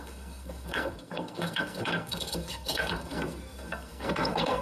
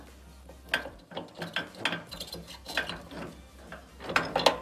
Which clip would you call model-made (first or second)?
first